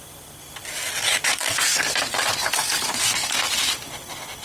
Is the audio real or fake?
real